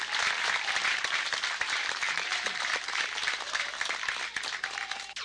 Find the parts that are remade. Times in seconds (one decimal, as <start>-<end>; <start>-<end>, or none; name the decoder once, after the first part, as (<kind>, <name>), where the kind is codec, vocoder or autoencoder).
0.9-3.7 (vocoder, BigVGAN v2)